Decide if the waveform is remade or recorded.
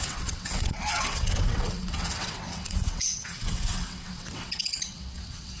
remade